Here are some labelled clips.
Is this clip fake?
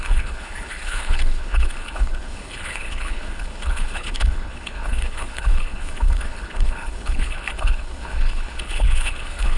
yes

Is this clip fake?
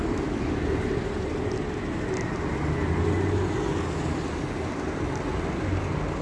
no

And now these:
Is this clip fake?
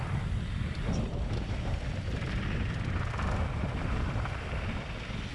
no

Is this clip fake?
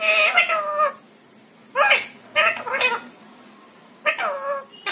no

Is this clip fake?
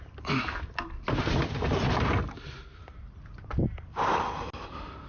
no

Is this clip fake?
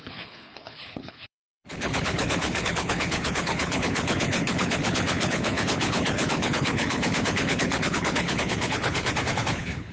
yes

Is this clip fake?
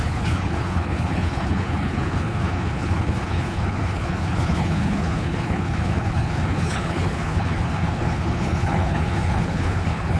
yes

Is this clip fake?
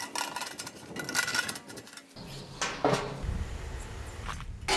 no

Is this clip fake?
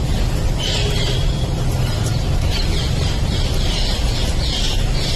no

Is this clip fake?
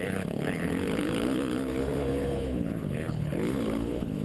yes